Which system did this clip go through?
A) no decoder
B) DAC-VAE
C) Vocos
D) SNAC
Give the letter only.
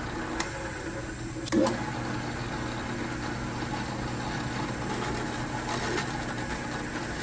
A